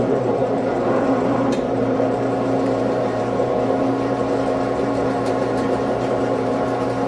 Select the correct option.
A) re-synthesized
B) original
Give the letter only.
A